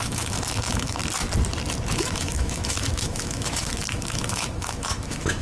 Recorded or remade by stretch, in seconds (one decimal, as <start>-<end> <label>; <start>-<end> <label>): 0.0-1.0 remade; 1.0-1.9 recorded; 1.9-5.4 remade